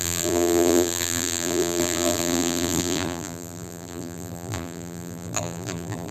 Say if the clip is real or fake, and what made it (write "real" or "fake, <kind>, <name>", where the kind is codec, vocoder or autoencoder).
fake, vocoder, BigVGAN v2